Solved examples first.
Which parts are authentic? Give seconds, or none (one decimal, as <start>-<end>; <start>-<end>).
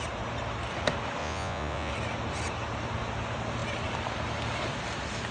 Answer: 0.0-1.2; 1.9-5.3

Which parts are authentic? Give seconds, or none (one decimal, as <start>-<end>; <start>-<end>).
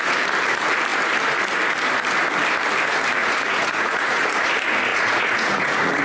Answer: 0.0-3.2; 4.5-4.9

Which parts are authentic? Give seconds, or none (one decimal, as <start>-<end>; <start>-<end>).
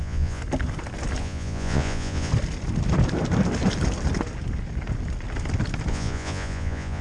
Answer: 0.4-1.2; 2.3-5.9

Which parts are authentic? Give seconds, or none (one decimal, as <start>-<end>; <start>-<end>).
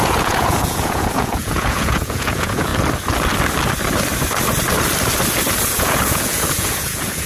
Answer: 2.7-5.7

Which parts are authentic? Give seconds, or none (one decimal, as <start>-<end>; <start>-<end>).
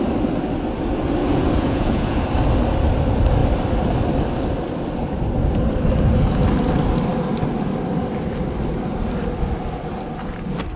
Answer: 0.0-1.2; 2.3-10.8